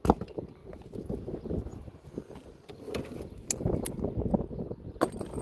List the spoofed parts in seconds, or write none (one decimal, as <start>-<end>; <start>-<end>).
none

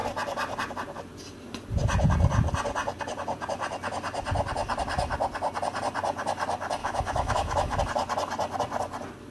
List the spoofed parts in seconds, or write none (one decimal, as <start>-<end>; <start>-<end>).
6.8-7.8

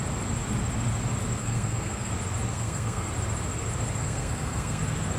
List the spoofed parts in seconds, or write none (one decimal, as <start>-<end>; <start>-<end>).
1.4-2.1; 2.5-3.1; 4.0-4.8

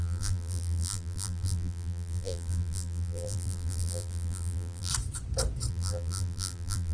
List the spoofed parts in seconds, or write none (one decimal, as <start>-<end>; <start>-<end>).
0.0-4.9; 5.7-6.9

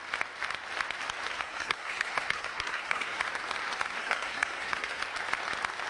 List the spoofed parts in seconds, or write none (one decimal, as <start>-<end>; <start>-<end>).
1.3-3.2; 4.0-5.0

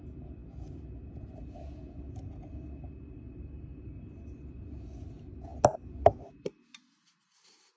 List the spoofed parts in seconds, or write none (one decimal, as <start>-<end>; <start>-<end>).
none

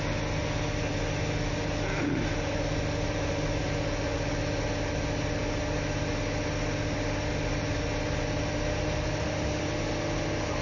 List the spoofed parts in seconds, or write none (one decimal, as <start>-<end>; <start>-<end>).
none